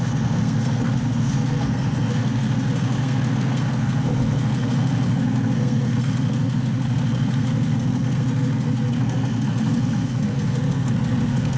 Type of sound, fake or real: fake